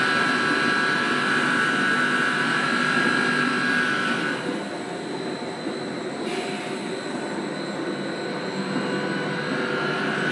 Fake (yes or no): no